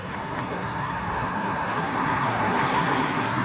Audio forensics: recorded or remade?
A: remade